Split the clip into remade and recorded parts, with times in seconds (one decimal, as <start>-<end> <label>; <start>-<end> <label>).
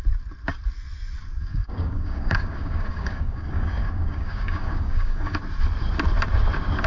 0.0-1.5 recorded; 1.5-5.4 remade; 5.4-6.9 recorded